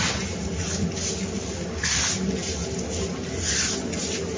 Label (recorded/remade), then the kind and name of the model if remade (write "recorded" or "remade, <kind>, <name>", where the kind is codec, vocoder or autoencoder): recorded